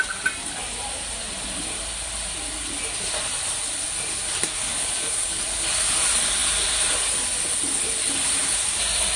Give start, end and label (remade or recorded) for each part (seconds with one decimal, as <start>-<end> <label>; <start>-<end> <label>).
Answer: 0.0-4.7 recorded; 4.7-5.4 remade; 5.4-9.2 recorded